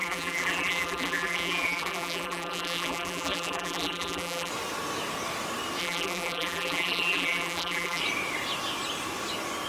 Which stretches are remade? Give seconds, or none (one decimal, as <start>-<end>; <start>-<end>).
0.0-4.5; 5.8-8.0

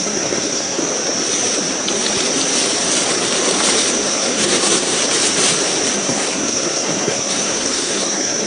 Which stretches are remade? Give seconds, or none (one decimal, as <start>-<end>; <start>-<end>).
0.0-0.8; 4.1-5.0; 6.0-8.5

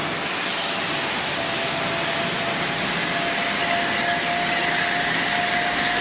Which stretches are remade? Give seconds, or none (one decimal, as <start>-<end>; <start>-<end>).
none

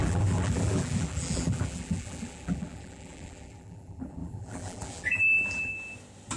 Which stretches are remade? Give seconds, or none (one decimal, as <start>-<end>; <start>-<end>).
0.0-5.7

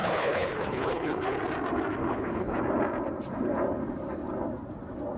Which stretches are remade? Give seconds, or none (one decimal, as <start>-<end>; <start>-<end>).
0.0-1.4; 2.0-2.6

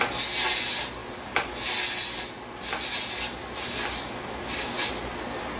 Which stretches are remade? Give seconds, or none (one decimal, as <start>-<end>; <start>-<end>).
none

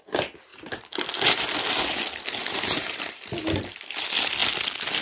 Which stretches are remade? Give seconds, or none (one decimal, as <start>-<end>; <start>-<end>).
2.4-3.3

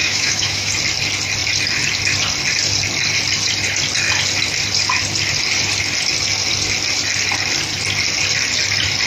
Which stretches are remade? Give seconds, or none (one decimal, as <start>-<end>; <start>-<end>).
0.0-0.7